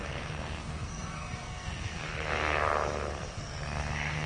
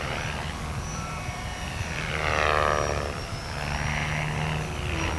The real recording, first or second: second